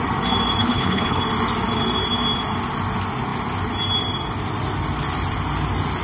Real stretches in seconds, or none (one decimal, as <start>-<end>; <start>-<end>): 0.0-0.6; 1.2-6.0